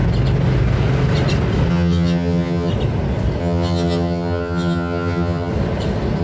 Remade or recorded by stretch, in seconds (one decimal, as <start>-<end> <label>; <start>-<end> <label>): 0.0-1.7 recorded; 1.7-2.7 remade; 2.7-3.4 recorded; 3.4-5.5 remade; 5.5-6.2 recorded